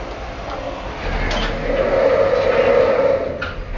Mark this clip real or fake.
real